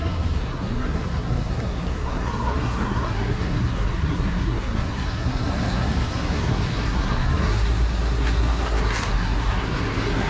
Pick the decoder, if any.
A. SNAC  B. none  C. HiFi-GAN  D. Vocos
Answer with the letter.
A